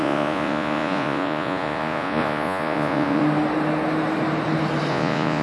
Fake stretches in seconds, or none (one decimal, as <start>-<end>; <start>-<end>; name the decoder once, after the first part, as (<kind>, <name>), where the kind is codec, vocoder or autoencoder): 0.0-3.2 (vocoder, Vocos); 4.9-5.4